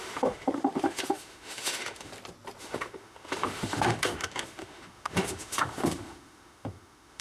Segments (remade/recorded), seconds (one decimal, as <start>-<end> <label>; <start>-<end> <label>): 0.0-2.1 remade; 2.1-2.6 recorded; 2.6-7.2 remade